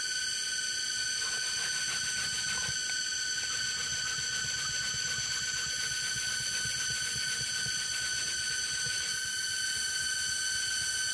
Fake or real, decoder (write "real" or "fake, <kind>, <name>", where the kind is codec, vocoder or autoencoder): real